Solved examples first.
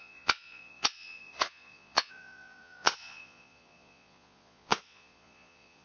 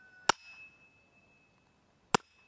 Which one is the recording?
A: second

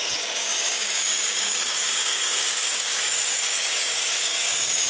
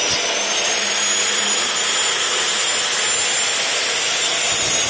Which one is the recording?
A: second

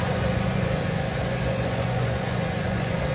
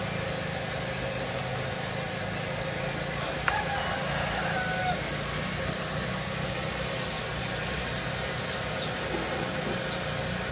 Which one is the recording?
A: second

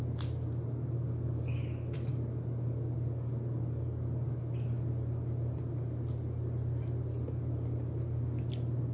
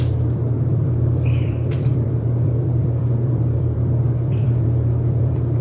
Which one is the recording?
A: first